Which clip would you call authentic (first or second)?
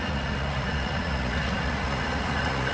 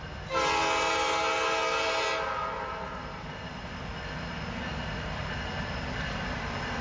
second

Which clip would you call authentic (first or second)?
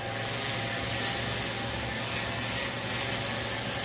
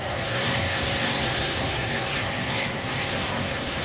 first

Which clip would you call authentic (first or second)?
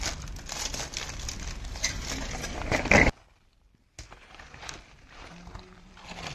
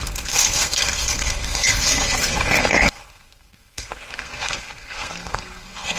first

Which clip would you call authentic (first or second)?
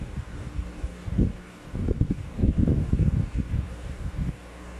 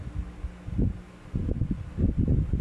second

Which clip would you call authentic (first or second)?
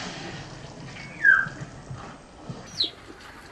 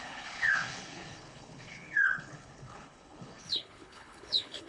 first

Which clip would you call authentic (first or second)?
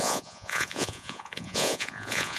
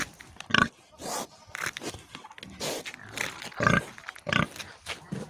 second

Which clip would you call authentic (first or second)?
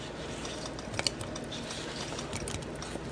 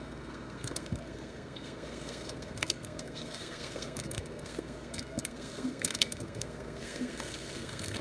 first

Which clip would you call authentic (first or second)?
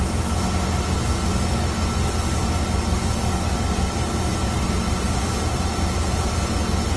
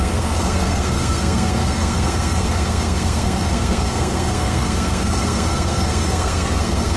first